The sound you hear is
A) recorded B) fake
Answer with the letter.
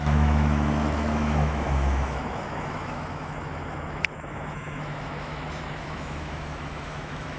B